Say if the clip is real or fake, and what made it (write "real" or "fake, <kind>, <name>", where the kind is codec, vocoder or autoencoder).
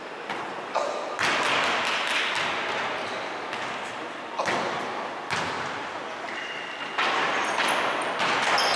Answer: real